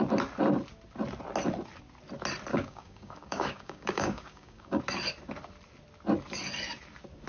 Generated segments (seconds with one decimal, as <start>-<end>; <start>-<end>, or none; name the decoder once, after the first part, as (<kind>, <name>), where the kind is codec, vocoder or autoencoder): 2.5-4.8 (codec, DAC)